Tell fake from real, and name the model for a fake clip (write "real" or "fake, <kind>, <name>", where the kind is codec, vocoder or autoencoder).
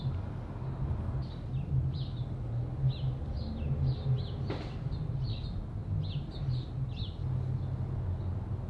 real